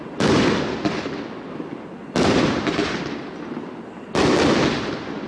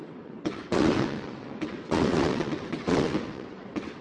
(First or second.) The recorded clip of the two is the first